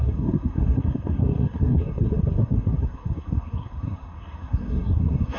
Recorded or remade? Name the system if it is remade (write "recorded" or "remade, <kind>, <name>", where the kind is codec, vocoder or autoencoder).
remade, codec, SNAC